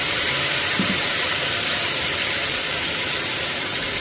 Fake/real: fake